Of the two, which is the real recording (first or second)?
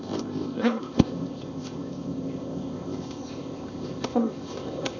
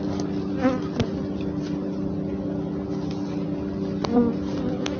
second